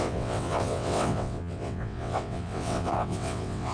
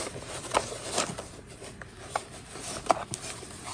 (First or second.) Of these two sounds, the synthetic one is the first